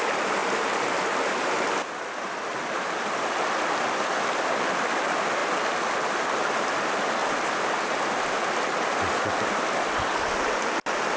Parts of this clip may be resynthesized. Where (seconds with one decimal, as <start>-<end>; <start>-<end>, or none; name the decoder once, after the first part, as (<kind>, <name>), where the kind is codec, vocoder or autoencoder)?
none